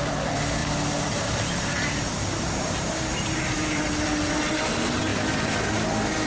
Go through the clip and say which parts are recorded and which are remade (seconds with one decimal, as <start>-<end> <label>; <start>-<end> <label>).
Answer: 0.0-0.6 recorded; 0.6-4.4 remade; 4.4-5.1 recorded; 5.1-5.7 remade; 5.7-6.3 recorded